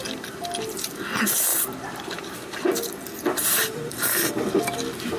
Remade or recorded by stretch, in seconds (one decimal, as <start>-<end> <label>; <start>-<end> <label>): 0.0-1.5 recorded; 1.5-4.6 remade; 4.6-5.2 recorded